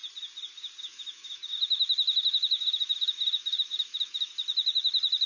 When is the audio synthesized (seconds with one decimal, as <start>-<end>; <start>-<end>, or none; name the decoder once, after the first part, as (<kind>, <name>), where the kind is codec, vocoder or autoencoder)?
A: 0.8-4.3 (autoencoder, DAC-VAE)